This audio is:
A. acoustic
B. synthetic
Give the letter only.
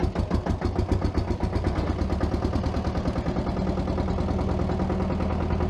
A